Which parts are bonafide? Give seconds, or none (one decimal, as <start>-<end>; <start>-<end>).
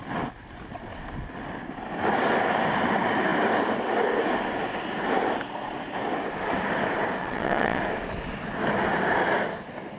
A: 0.0-7.2; 7.8-10.0